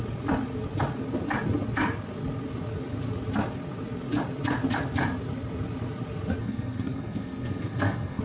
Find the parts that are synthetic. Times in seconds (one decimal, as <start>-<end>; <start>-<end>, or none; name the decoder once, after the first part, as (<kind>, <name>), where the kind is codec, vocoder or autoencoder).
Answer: 6.4-8.2 (codec, SNAC)